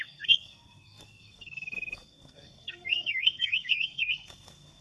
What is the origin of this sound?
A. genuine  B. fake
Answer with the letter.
B